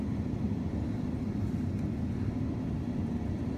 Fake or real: real